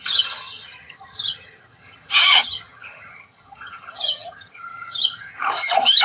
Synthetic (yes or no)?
yes